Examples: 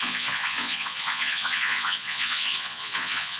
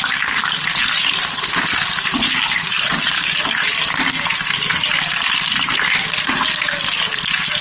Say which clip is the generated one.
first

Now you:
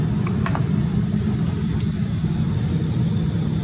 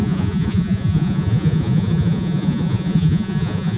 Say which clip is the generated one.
second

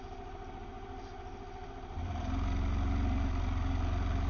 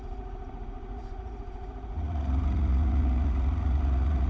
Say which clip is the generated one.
second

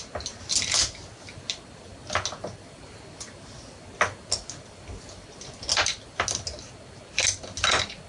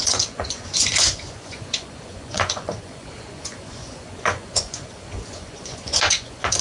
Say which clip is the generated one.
second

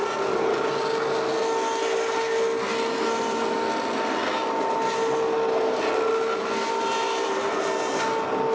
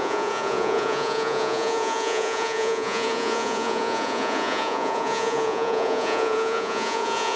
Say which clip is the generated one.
second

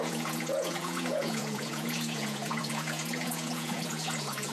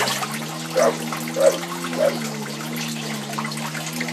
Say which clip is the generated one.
first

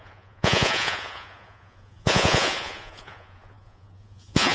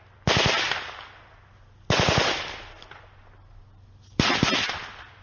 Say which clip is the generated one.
first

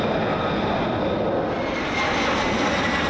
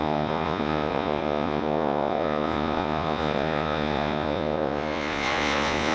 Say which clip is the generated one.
second